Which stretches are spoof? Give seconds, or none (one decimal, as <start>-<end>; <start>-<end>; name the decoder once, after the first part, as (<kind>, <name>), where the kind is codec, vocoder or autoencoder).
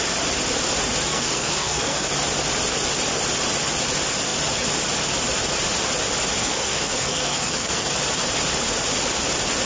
1.1-2.1 (codec, SNAC); 6.4-7.9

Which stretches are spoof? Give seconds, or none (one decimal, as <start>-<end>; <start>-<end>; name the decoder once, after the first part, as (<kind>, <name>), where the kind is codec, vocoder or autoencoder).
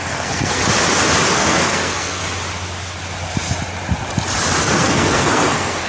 0.0-0.6 (codec, SNAC); 1.3-2.2; 4.6-5.9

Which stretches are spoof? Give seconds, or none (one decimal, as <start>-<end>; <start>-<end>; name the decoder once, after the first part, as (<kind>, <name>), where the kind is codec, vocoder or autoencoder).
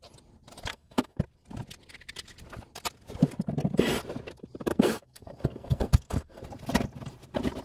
0.7-1.2 (codec, SNAC); 4.7-6.4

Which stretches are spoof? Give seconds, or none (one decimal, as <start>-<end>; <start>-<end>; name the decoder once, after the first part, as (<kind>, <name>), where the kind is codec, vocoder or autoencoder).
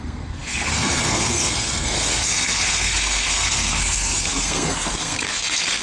0.0-5.8 (codec, SNAC)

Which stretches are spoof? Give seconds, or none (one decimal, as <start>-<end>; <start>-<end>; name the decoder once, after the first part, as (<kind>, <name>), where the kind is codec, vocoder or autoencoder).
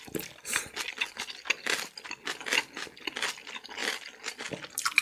none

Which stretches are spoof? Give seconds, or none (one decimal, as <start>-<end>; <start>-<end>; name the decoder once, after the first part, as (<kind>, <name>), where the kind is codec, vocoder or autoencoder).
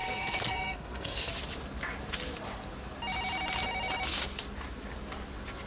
0.0-1.3 (codec, SNAC)